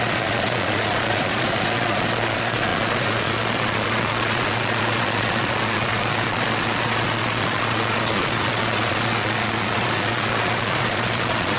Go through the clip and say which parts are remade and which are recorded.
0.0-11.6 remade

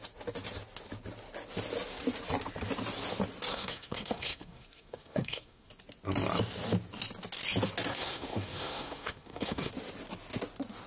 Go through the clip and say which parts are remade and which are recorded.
0.0-3.5 recorded; 3.5-5.7 remade; 5.7-7.9 recorded; 7.9-9.7 remade; 9.7-10.9 recorded

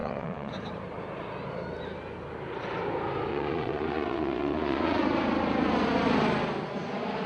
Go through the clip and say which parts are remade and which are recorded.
0.0-0.5 remade; 0.5-3.3 recorded; 3.3-5.0 remade; 5.0-7.3 recorded

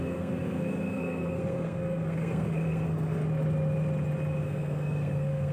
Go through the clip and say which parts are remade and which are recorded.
0.0-3.2 remade; 3.2-4.4 recorded; 4.4-5.5 remade

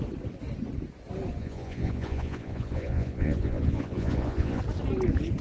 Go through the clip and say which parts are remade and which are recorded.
0.0-1.4 recorded; 1.4-4.6 remade; 4.6-5.4 recorded

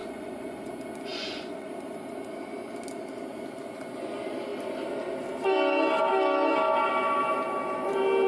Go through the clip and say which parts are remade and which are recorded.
0.0-0.7 remade; 0.7-1.1 recorded; 1.1-1.7 remade; 1.7-8.3 recorded

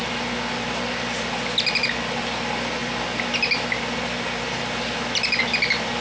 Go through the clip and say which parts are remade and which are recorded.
0.0-6.0 recorded

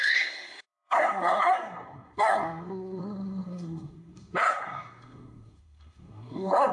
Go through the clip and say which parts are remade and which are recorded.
0.0-6.7 remade